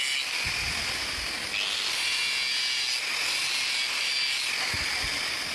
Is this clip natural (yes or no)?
yes